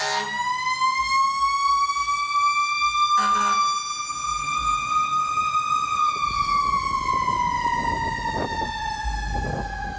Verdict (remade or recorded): recorded